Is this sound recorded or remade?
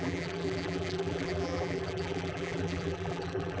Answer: remade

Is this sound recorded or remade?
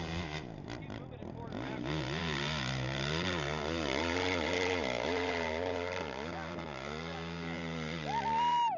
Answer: remade